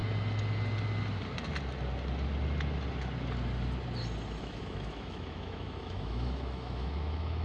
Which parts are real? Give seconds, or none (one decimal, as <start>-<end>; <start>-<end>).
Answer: 0.0-4.4